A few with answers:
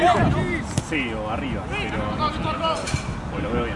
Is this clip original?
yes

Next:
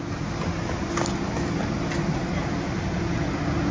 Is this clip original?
yes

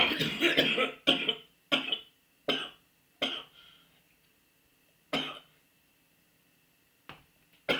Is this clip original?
yes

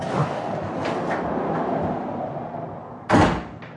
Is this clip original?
yes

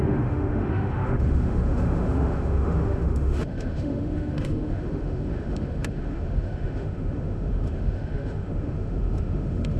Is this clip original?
no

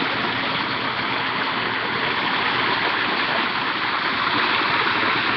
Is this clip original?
yes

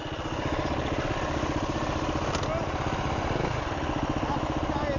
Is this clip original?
yes